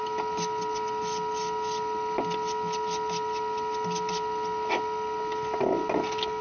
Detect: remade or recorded recorded